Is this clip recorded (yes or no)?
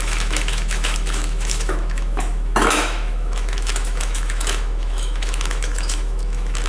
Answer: no